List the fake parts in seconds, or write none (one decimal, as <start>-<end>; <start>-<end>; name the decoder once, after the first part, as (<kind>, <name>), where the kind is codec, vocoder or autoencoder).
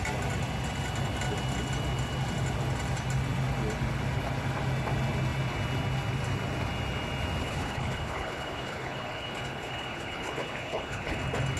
7.4-11.2 (codec, HILCodec)